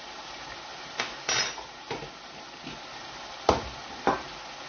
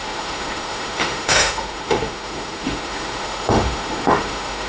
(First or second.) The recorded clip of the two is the first